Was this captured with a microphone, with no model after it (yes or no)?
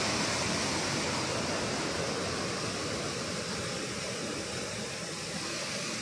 yes